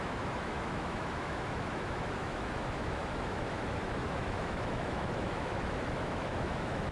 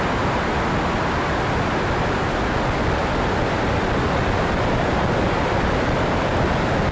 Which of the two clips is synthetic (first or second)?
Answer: first